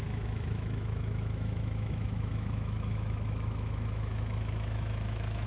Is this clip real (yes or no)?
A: no